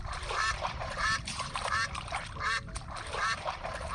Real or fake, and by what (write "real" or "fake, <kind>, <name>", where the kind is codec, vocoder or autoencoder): fake, vocoder, BigVGAN v2